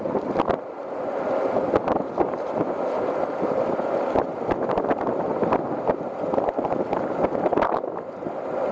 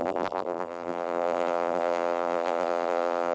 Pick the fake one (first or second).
second